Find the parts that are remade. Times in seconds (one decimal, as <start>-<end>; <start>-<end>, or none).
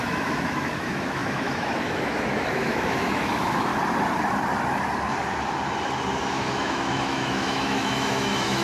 0.0-3.7; 6.2-8.6